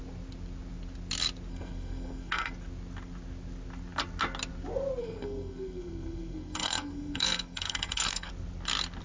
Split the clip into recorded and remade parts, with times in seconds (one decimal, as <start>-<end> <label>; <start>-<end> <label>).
0.0-1.5 recorded; 1.5-2.5 remade; 2.5-5.0 recorded; 5.0-8.3 remade; 8.3-9.0 recorded